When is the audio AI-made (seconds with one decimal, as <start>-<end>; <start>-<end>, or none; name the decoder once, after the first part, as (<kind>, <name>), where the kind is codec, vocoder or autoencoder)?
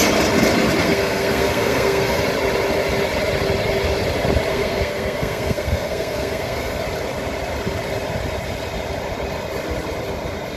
0.8-2.2 (codec, SNAC); 4.5-6.8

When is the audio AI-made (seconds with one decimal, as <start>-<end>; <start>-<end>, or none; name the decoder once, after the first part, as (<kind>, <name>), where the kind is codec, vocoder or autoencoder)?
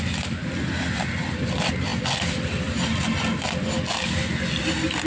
none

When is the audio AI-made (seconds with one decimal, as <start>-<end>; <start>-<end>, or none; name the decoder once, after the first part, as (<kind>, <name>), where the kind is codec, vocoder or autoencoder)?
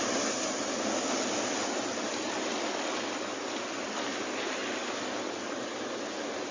none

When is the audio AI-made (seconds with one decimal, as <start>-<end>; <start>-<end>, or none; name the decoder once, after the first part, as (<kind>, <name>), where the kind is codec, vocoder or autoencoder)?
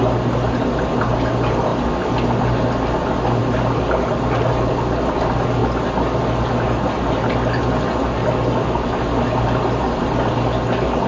none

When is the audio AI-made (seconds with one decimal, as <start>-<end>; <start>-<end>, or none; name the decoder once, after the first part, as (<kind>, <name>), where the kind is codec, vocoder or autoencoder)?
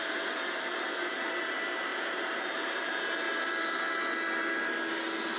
1.9-2.9 (vocoder, BigVGAN v2)